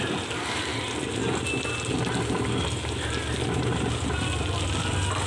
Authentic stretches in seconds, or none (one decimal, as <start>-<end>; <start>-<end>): 0.0-5.3